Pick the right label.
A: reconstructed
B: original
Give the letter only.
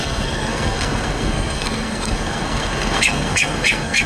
A